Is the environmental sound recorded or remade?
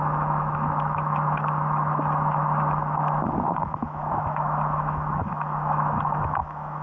remade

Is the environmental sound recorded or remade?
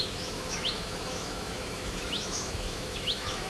remade